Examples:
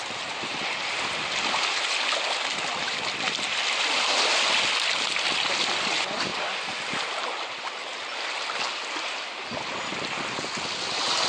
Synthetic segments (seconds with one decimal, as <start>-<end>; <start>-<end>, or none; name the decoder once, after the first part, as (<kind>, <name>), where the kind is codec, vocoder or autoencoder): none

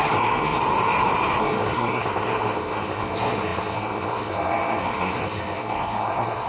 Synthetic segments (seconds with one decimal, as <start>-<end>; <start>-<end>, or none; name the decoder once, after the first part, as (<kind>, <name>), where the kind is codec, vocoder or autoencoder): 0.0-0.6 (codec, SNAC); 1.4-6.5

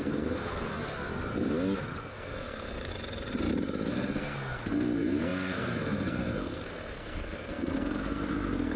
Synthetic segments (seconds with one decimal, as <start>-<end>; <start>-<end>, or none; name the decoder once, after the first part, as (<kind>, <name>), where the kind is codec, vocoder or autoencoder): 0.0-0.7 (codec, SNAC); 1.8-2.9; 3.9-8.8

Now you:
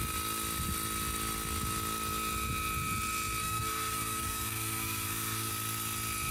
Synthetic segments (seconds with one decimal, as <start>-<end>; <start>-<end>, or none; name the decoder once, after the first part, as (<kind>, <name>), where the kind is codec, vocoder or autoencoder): 3.4-5.5 (codec, SNAC)

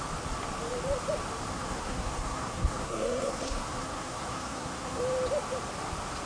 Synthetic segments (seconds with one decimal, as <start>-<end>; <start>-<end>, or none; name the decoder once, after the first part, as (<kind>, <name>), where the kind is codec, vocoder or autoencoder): 1.5-5.0 (codec, SNAC)